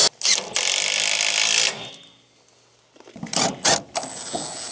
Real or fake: real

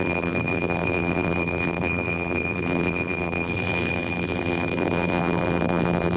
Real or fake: fake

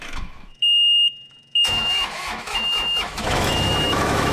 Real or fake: fake